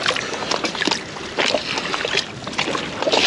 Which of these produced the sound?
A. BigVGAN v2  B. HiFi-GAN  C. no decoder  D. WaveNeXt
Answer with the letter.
C